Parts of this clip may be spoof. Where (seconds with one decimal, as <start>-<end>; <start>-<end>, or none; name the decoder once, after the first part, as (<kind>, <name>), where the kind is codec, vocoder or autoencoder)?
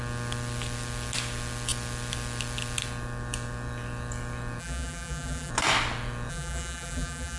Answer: 4.6-5.5 (vocoder, BigVGAN v2); 6.3-7.4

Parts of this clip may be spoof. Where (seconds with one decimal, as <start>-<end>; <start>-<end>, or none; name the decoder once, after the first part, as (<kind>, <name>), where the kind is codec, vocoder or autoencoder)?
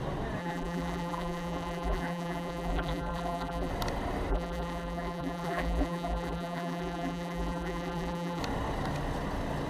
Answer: 0.4-3.7 (vocoder, BigVGAN v2); 4.3-8.4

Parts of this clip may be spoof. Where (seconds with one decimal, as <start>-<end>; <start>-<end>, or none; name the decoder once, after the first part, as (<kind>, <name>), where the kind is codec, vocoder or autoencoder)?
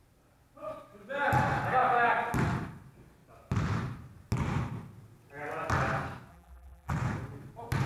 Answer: 6.3-6.9 (vocoder, BigVGAN v2)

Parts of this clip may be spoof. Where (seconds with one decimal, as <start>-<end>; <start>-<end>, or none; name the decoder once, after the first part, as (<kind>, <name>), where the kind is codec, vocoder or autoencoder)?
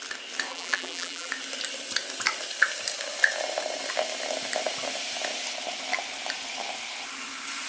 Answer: 0.5-1.3 (vocoder, BigVGAN v2)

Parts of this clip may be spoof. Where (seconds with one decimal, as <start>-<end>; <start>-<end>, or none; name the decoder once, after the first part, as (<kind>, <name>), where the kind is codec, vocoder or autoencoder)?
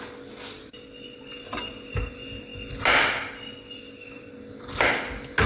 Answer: 0.0-2.5 (vocoder, BigVGAN v2); 4.6-5.5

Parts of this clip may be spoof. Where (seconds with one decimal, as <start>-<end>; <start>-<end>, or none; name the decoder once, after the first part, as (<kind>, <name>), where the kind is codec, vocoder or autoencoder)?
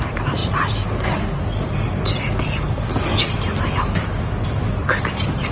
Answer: none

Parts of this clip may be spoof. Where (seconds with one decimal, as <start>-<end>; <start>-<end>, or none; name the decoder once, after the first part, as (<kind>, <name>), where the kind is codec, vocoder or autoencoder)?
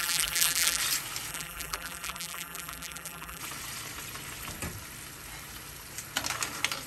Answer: 0.0-0.8 (vocoder, BigVGAN v2); 1.3-3.4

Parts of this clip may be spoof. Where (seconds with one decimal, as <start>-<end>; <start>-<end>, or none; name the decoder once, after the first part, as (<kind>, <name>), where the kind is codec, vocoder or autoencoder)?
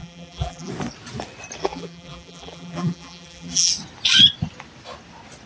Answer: 0.0-0.7 (vocoder, BigVGAN v2); 1.6-3.7